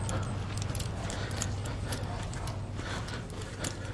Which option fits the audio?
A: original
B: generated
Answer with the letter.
A